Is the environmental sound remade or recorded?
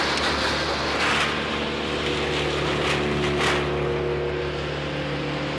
recorded